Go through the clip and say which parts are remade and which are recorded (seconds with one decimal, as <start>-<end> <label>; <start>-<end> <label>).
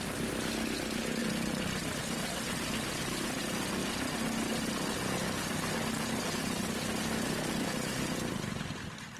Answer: 0.0-1.2 recorded; 1.2-3.4 remade; 3.4-9.2 recorded